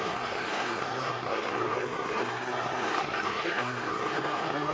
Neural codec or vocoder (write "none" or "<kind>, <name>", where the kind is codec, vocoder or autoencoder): codec, SNAC